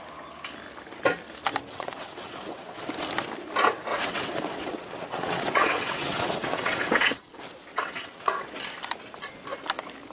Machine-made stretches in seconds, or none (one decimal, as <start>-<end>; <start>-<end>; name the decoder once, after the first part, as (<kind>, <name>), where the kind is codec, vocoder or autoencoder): 1.7-2.8 (vocoder, WaveNeXt); 3.9-7.3; 7.7-8.4